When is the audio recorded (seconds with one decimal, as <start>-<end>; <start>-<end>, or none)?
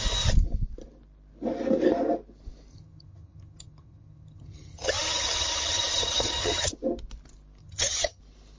0.0-2.7; 6.7-7.6; 8.2-8.6